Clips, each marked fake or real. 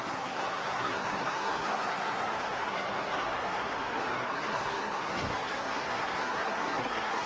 fake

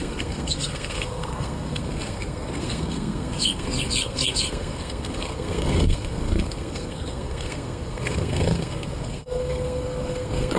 fake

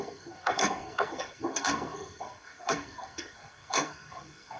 fake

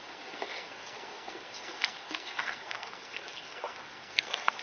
fake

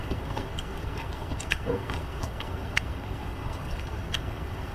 fake